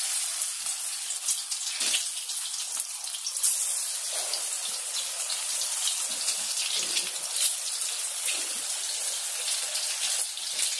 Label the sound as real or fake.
real